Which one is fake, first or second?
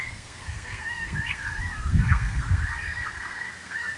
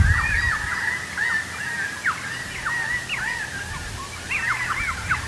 first